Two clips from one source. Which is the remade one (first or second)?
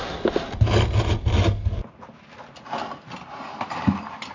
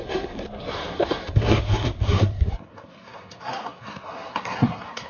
second